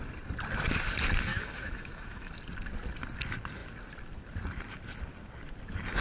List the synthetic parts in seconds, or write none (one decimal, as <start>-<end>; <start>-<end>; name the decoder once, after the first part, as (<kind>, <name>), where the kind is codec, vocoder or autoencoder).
1.3-2.3 (autoencoder, DAC-VAE)